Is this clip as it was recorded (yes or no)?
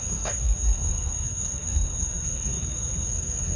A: no